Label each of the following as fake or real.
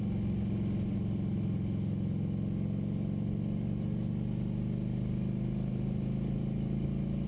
real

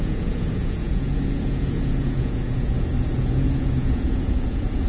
fake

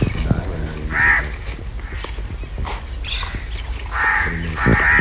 real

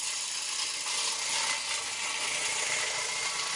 real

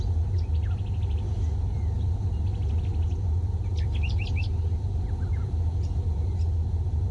real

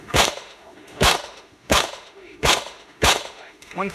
fake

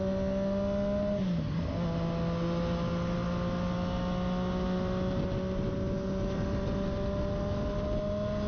real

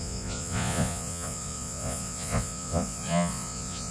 fake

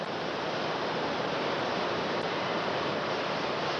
fake